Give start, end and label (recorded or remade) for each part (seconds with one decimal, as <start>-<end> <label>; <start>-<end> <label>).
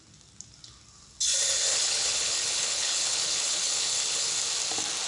0.0-1.7 recorded; 1.7-4.4 remade; 4.4-5.1 recorded